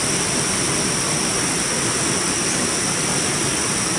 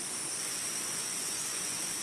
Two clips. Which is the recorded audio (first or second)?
first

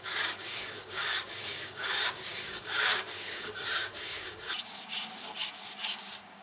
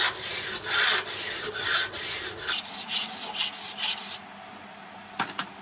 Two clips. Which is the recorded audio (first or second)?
second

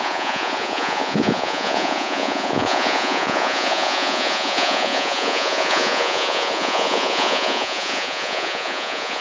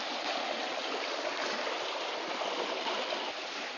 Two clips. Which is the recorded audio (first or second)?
second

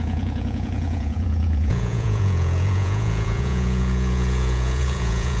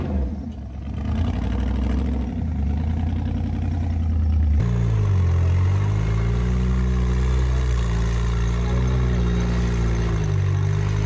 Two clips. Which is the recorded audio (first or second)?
second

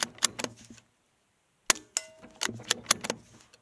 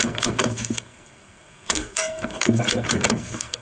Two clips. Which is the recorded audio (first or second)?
first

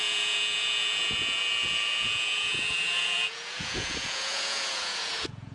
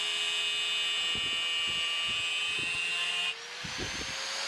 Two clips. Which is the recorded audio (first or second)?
second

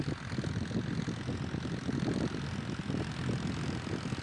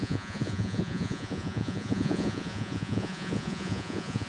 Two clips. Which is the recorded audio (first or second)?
first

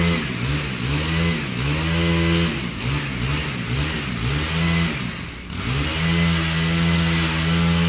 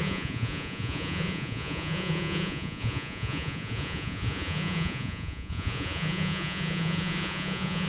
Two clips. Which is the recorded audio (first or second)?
first